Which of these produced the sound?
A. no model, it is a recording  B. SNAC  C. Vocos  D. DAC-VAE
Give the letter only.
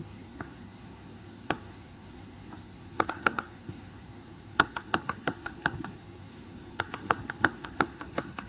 B